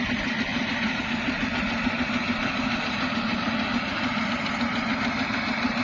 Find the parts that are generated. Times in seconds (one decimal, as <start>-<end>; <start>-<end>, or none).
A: 0.0-5.8

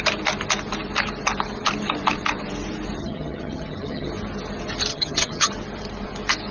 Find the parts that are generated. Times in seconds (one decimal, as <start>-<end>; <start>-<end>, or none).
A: 3.0-4.1; 4.9-5.5

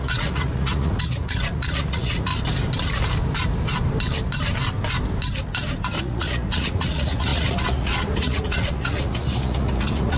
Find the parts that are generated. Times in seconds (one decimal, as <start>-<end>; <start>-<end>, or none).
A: 0.0-2.3; 6.0-10.2

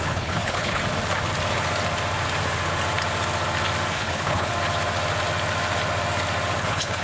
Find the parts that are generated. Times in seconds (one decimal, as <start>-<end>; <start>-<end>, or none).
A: 0.0-0.8; 3.9-4.5; 6.6-7.0